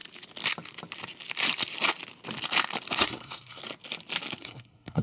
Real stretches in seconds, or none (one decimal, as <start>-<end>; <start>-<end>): 0.0-3.0; 3.6-4.4

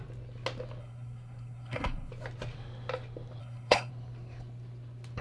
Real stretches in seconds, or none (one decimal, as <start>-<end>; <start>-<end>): 0.0-0.8; 2.1-3.4; 3.9-5.2

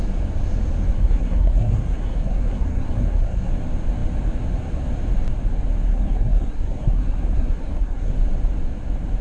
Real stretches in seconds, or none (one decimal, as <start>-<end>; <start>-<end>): 0.0-0.9; 3.5-5.9; 8.1-9.2

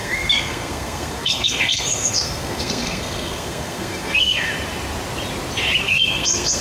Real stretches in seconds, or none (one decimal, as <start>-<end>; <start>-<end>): 4.5-5.8

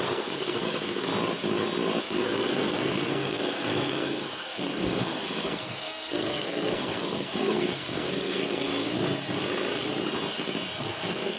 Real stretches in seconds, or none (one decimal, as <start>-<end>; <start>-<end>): 1.1-2.0; 8.7-10.8

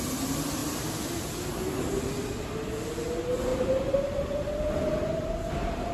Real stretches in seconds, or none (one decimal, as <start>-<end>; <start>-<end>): 0.0-5.9

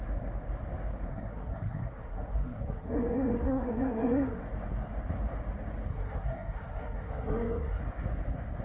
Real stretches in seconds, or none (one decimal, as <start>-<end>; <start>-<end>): 0.0-1.1; 4.4-5.9; 7.8-8.6

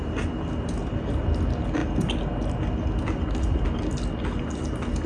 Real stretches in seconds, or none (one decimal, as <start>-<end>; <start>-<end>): 0.0-5.1